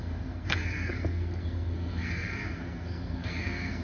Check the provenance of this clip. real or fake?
fake